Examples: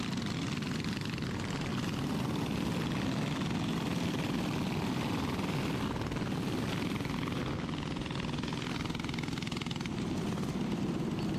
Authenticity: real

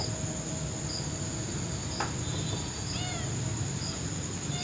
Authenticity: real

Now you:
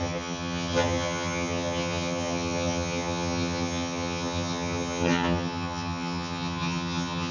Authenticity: fake